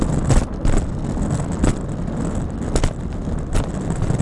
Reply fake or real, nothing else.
real